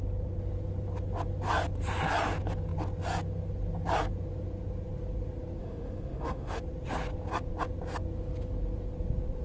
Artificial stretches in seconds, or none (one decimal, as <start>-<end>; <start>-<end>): 5.6-6.6